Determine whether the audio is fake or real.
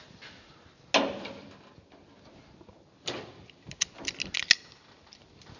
real